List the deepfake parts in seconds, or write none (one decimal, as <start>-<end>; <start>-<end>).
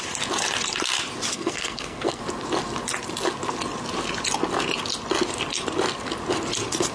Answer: 1.3-2.2